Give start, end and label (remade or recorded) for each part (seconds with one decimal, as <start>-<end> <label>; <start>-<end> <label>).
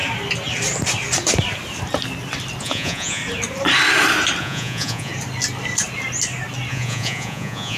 0.0-2.6 recorded; 2.6-3.2 remade; 3.2-4.4 recorded; 4.4-5.1 remade; 5.1-6.7 recorded; 6.7-7.8 remade